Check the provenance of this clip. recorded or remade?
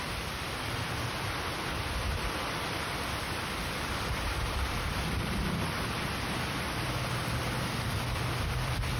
remade